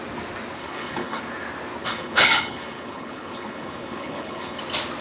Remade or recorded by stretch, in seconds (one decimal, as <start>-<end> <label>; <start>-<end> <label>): 0.0-0.6 recorded; 0.6-1.2 remade; 1.2-1.8 recorded; 1.8-4.6 remade; 4.6-5.0 recorded